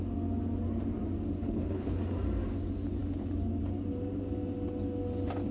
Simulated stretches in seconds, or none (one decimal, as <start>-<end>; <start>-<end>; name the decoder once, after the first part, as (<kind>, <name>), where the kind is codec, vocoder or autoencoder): 1.4-2.0 (codec, HILCodec)